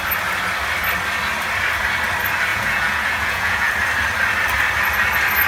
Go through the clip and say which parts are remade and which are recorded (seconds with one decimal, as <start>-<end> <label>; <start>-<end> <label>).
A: 0.0-2.5 recorded; 2.5-3.7 remade; 3.7-5.5 recorded